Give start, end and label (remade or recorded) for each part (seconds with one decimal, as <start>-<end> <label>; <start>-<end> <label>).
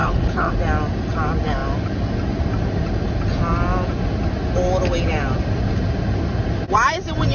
0.0-0.5 remade; 0.5-7.3 recorded